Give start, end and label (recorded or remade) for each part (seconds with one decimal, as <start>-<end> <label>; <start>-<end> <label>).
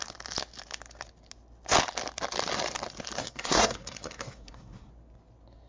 0.0-3.2 recorded; 3.2-4.9 remade; 4.9-5.7 recorded